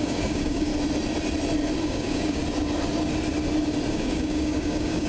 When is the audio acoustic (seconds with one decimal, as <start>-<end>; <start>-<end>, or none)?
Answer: 0.7-1.8; 2.4-3.9